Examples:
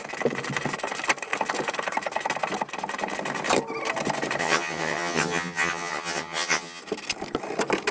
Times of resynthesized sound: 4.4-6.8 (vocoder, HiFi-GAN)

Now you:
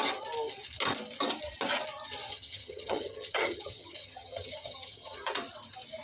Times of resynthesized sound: 2.3-5.2 (vocoder, HiFi-GAN)

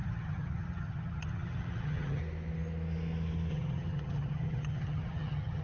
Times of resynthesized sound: 0.0-2.2 (vocoder, HiFi-GAN); 3.5-5.6

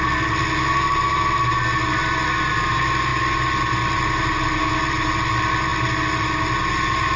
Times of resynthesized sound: none

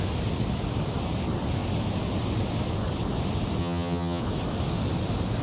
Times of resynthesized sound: 3.6-4.2 (vocoder, HiFi-GAN)

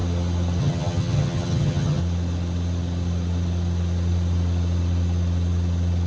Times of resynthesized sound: 0.6-2.0 (vocoder, HiFi-GAN)

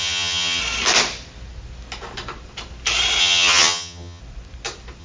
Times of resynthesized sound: 0.0-0.6 (vocoder, HiFi-GAN); 3.2-4.2

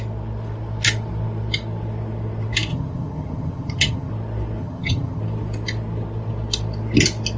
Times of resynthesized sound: 2.7-4.1 (vocoder, HiFi-GAN); 4.6-5.2